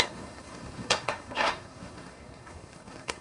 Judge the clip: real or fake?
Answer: fake